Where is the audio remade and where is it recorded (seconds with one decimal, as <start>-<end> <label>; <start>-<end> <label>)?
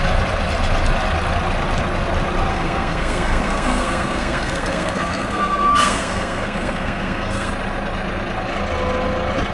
0.0-2.5 recorded; 2.5-7.5 remade; 7.5-9.5 recorded